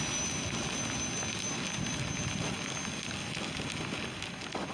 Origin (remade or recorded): recorded